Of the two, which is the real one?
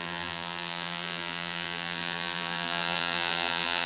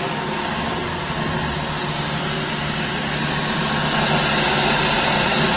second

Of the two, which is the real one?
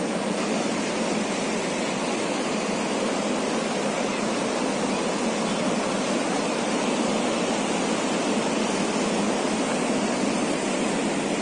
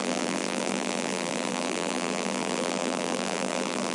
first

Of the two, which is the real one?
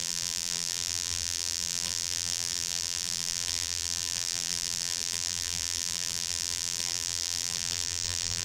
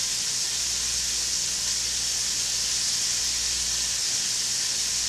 second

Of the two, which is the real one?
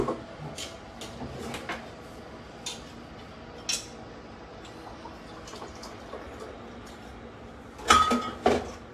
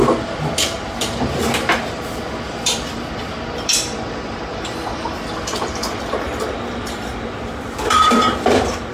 first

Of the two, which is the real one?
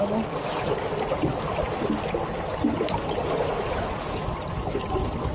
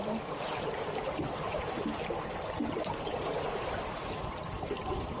first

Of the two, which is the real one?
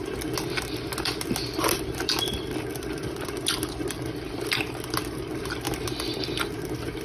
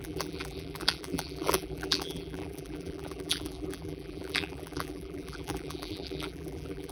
first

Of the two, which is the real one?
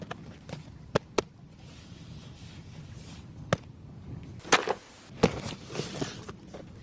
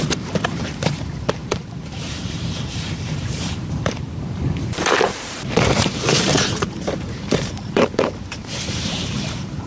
first